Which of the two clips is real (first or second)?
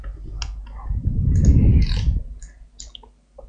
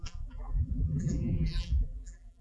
first